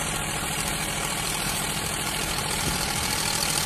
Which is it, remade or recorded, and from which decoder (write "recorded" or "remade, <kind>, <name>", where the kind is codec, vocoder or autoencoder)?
remade, vocoder, BigVGAN v2